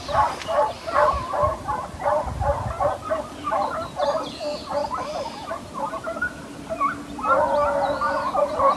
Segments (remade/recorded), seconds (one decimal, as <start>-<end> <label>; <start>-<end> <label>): 0.0-8.8 recorded